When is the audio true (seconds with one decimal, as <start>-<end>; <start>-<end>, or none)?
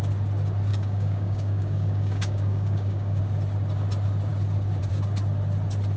0.0-0.7; 3.2-6.0